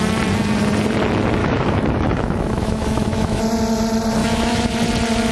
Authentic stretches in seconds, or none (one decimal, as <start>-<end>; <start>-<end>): 0.0-1.4; 3.4-4.2; 4.7-5.3